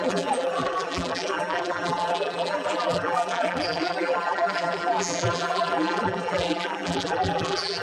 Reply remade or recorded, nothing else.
remade